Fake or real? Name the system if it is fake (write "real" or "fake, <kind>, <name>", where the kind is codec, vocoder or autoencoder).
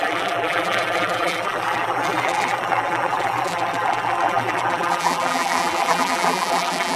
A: fake, vocoder, BigVGAN v2